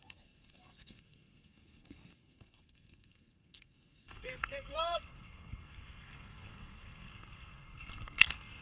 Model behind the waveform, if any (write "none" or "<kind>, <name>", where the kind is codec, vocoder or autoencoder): codec, SNAC